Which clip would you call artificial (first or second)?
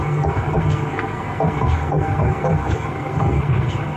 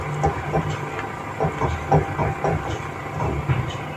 first